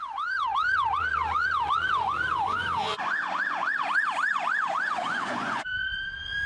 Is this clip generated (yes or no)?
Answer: yes